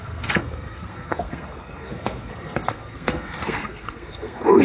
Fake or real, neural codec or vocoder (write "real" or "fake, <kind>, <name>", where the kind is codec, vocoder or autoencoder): fake, codec, SNAC